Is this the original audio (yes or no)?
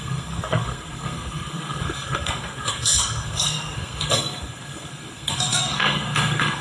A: no